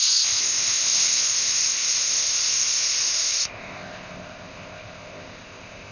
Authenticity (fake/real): fake